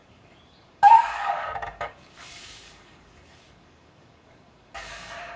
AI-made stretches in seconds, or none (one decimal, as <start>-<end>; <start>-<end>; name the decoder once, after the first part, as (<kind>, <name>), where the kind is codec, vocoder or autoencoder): 0.0-5.4 (codec, DAC)